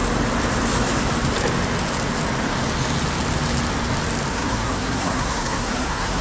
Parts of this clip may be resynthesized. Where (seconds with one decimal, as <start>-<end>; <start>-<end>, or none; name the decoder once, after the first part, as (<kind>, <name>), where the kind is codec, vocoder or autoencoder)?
4.3-6.2 (codec, SNAC)